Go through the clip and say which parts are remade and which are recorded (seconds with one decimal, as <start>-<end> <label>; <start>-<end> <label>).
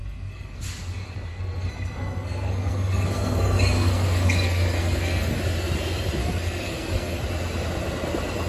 0.0-0.6 remade; 0.6-1.3 recorded; 1.3-5.4 remade; 5.4-6.2 recorded; 6.2-7.2 remade; 7.2-8.5 recorded